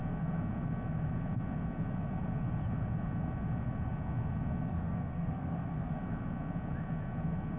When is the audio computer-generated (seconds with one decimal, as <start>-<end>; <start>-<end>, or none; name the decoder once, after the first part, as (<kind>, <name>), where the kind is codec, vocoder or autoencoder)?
4.7-5.9 (codec, SNAC)